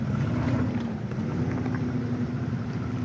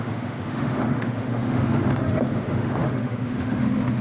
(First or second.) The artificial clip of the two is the second